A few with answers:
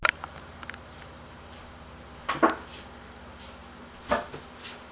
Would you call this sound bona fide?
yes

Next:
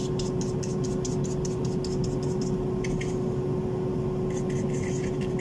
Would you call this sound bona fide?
yes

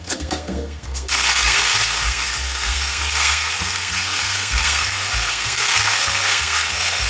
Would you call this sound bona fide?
no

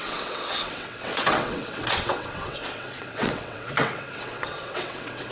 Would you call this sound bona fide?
no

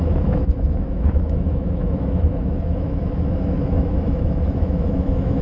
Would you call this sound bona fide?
no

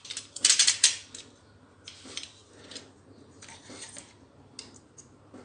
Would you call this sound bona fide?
yes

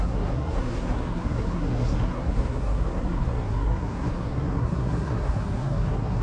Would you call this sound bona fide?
no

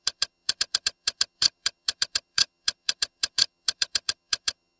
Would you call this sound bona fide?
no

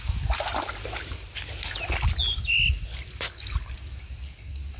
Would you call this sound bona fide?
yes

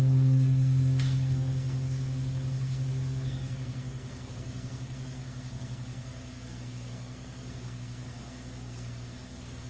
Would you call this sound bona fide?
no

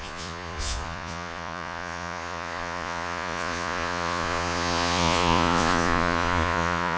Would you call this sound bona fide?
no